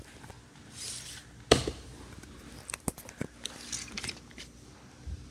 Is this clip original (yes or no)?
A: yes